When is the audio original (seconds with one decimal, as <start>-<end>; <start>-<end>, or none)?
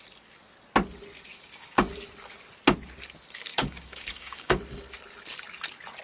0.0-1.3; 1.9-3.5; 4.6-6.0